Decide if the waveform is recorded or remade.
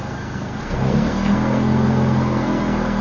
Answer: remade